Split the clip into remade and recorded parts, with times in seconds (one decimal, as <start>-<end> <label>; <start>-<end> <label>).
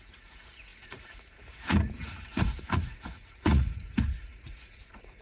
0.0-5.2 remade